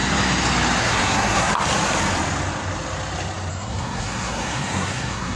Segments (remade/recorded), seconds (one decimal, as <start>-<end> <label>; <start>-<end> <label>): 0.0-0.8 recorded; 0.8-1.5 remade; 1.5-3.5 recorded; 3.5-5.4 remade